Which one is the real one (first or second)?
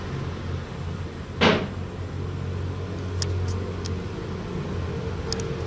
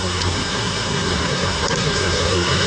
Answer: first